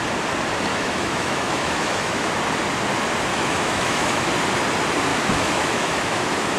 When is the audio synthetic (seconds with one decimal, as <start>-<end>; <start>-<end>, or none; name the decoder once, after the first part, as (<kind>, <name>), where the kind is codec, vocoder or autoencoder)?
0.7-2.3 (autoencoder, DAC-VAE); 3.3-4.3; 5.1-6.6